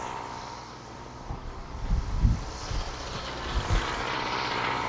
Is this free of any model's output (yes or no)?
yes